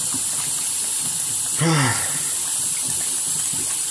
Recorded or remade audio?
recorded